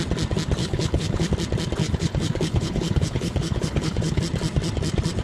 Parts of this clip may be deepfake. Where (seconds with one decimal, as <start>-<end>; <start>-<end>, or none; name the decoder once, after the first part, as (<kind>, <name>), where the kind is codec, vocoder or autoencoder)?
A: 0.6-1.3 (codec, HILCodec); 1.8-4.2